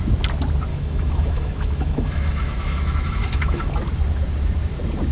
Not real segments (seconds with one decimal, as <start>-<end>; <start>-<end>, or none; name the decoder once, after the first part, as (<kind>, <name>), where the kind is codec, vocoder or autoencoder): 0.7-3.7 (autoencoder, DAC-VAE)